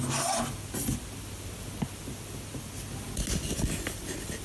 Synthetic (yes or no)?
no